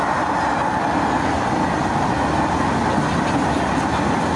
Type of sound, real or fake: real